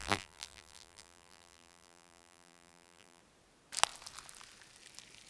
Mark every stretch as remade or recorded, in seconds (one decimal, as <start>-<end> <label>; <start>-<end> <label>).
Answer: 0.0-3.2 remade; 3.2-5.3 recorded